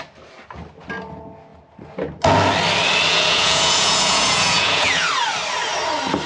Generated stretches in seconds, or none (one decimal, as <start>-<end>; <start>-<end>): 3.1-5.1